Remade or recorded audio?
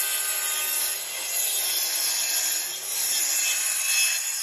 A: recorded